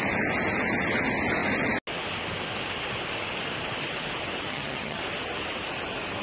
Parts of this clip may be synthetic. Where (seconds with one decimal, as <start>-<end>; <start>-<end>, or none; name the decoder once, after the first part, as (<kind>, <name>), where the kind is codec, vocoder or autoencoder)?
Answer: 4.5-5.0 (vocoder, HiFi-GAN)